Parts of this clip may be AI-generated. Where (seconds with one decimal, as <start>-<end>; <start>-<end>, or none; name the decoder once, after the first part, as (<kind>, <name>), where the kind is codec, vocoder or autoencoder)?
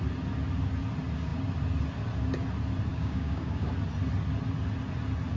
2.9-3.7 (codec, DAC)